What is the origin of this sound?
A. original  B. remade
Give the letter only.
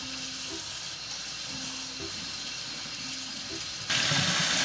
A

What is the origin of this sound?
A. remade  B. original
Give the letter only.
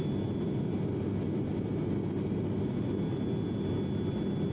B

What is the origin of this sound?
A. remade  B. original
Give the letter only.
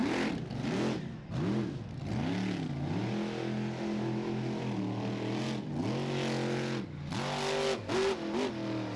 B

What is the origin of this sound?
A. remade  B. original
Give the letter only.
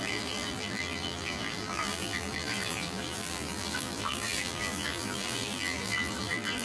A